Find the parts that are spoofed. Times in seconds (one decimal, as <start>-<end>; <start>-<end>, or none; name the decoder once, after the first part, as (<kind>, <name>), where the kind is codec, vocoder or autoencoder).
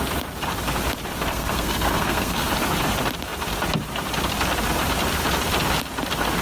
1.3-2.5 (codec, SNAC)